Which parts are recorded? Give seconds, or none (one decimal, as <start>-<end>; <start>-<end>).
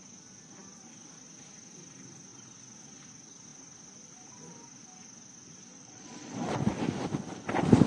0.0-5.7; 6.7-7.9